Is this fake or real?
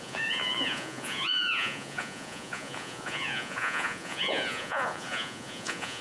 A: fake